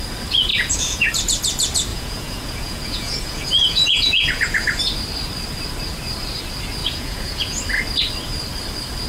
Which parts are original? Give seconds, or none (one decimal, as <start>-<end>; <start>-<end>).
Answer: 0.0-0.5; 1.1-1.9; 4.8-6.8; 7.6-9.1